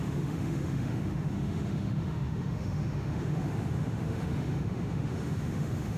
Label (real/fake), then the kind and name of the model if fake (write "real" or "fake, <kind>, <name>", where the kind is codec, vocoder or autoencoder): fake, autoencoder, DAC-VAE